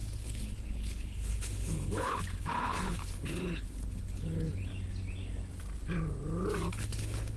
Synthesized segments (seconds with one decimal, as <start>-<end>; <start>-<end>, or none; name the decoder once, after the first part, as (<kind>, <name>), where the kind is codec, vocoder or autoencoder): 0.0-4.7 (codec, HILCodec); 6.7-7.4